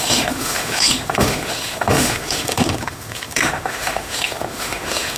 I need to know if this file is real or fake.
fake